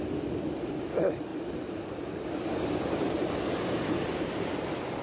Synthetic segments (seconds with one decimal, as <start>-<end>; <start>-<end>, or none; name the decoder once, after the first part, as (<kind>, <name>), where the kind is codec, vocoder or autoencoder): 3.2-5.0 (vocoder, BigVGAN v2)